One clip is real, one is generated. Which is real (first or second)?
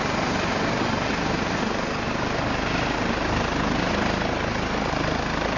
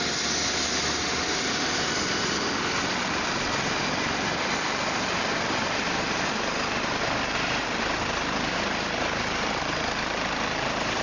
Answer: first